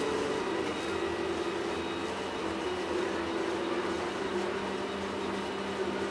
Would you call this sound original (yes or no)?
yes